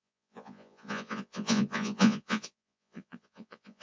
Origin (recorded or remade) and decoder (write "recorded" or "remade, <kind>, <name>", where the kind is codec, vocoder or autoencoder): remade, vocoder, Vocos